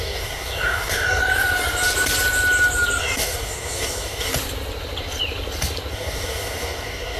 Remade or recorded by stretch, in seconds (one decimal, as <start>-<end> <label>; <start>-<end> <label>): 0.0-1.2 remade; 1.2-3.0 recorded; 3.0-4.3 remade; 4.3-5.9 recorded; 5.9-7.2 remade